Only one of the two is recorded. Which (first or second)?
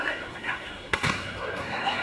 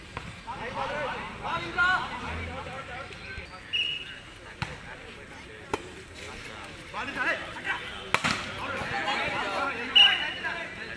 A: second